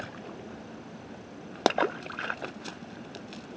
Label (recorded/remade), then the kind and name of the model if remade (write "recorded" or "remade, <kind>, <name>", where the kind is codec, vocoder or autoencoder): recorded